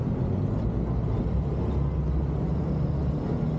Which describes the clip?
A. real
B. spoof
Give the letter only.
A